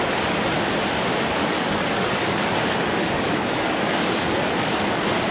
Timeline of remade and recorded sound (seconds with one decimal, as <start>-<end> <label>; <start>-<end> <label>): 0.0-1.4 recorded; 1.4-4.6 remade; 4.6-5.3 recorded